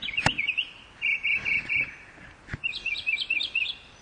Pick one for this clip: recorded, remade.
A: recorded